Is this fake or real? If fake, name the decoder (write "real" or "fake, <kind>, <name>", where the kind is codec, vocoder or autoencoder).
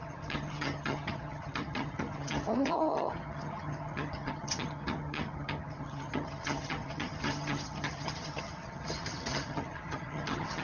fake, vocoder, HiFi-GAN